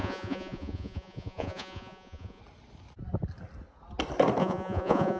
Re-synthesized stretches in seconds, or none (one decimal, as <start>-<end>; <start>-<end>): 0.0-2.4; 4.4-5.2